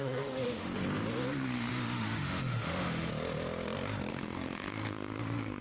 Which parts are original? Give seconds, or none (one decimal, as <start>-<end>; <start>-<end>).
0.7-1.7; 3.1-4.1